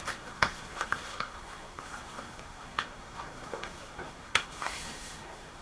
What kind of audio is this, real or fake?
fake